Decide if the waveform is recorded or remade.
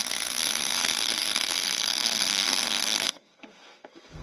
remade